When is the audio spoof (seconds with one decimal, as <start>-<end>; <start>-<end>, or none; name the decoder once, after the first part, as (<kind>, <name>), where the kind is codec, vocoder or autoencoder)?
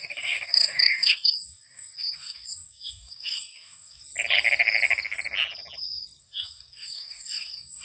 0.0-4.0 (codec, DAC); 6.2-7.8